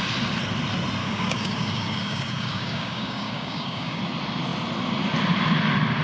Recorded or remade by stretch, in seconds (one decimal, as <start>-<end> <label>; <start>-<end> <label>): 0.0-1.0 recorded; 1.0-4.0 remade; 4.0-6.0 recorded